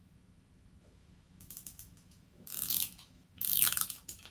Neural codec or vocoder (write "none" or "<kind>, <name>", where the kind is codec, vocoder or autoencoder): autoencoder, DAC-VAE